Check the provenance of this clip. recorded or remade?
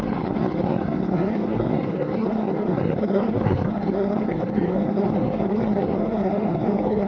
remade